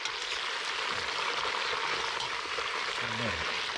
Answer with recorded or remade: recorded